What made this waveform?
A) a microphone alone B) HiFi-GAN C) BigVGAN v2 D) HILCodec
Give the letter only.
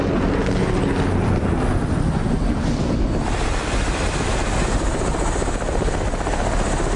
A